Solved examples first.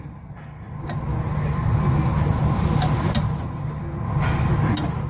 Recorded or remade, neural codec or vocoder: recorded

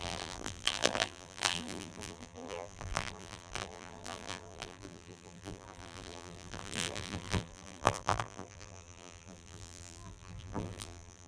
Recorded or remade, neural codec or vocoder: remade, vocoder, BigVGAN v2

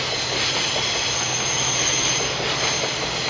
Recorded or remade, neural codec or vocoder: recorded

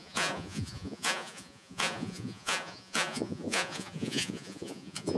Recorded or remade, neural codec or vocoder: remade, vocoder, Vocos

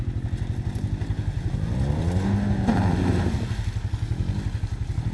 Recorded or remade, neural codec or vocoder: recorded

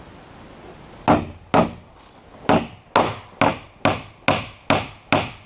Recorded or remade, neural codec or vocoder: recorded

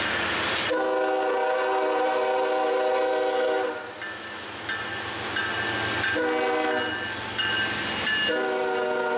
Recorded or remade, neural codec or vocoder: recorded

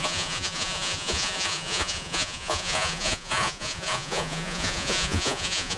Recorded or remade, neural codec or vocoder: remade, vocoder, Vocos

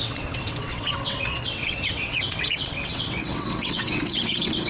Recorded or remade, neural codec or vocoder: remade, vocoder, WaveNeXt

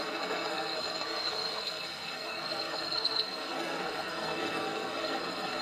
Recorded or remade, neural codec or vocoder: remade, codec, SNAC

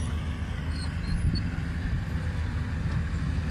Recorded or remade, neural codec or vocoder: recorded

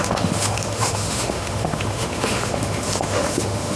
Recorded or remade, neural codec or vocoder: remade, autoencoder, DAC-VAE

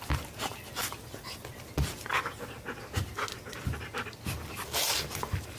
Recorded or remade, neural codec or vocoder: recorded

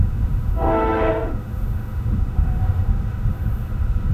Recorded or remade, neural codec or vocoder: remade, autoencoder, DAC-VAE